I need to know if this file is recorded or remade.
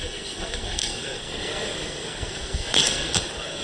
remade